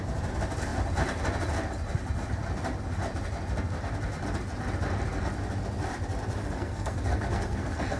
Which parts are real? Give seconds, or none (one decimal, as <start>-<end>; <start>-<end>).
0.0-6.4